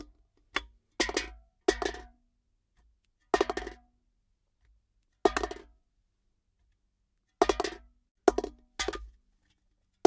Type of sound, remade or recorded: recorded